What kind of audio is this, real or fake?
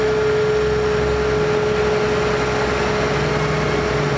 real